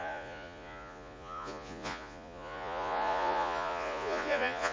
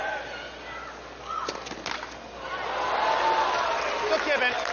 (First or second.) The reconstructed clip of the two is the first